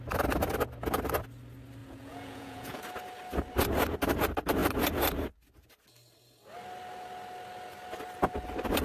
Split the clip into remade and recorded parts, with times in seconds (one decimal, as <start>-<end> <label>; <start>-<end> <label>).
0.0-1.8 recorded; 1.8-2.8 remade; 2.8-8.8 recorded